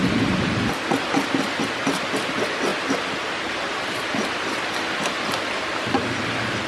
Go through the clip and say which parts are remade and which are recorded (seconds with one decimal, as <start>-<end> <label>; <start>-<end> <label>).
0.0-6.7 recorded